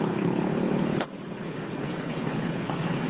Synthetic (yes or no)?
yes